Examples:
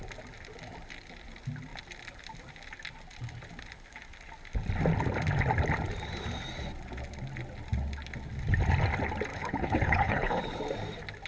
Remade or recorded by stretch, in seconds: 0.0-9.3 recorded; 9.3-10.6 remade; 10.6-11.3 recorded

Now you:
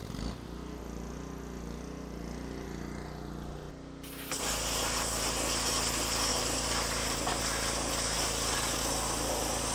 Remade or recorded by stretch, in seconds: 0.0-6.3 recorded; 6.3-7.4 remade; 7.4-9.7 recorded

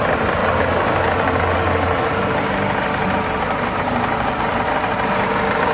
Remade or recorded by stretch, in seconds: 0.0-5.7 recorded

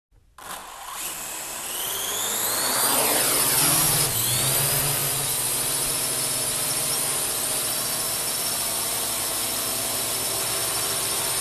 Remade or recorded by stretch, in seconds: 0.0-11.4 recorded

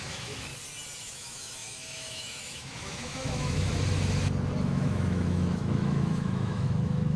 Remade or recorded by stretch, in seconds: 0.0-0.5 remade; 0.5-1.0 recorded; 1.0-3.7 remade; 3.7-4.6 recorded; 4.6-7.2 remade